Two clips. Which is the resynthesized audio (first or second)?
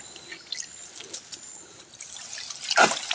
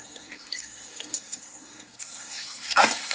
second